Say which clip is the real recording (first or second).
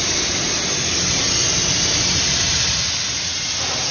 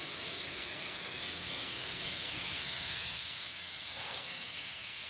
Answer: first